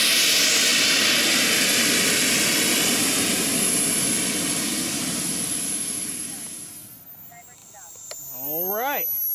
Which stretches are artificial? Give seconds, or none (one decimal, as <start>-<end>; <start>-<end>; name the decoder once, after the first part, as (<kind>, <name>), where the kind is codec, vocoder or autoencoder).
none